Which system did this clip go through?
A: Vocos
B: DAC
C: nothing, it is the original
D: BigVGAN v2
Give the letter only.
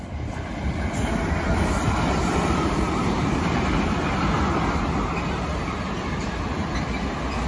C